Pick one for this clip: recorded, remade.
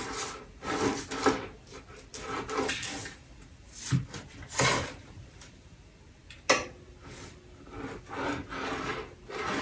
recorded